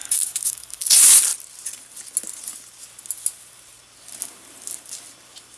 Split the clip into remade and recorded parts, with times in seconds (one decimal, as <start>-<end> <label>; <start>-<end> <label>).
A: 0.0-0.8 remade; 0.8-5.6 recorded